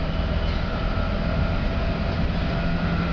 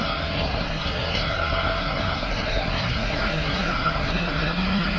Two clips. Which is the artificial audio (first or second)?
second